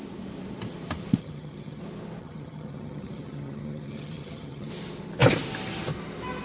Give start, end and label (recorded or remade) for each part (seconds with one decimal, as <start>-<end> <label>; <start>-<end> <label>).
0.0-1.2 recorded; 1.2-1.8 remade; 1.8-2.2 recorded; 2.2-4.7 remade; 4.7-6.4 recorded